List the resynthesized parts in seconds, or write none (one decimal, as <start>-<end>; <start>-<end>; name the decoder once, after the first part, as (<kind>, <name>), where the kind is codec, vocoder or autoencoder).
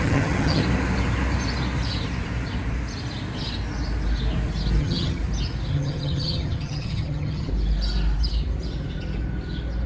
0.0-0.6 (vocoder, HiFi-GAN); 4.8-5.2; 5.7-7.5